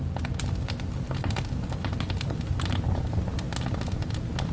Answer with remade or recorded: recorded